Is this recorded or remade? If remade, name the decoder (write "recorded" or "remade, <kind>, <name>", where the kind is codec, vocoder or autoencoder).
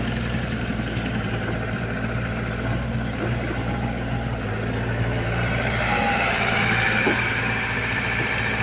remade, vocoder, BigVGAN v2